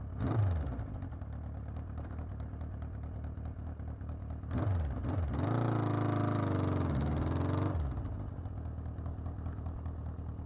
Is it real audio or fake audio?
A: real